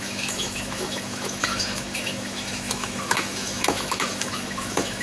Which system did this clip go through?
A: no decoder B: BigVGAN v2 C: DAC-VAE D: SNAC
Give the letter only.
C